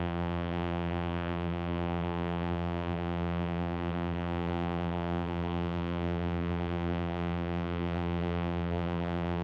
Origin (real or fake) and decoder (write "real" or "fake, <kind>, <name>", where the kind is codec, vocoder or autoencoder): fake, vocoder, BigVGAN v2